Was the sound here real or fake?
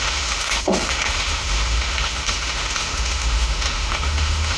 fake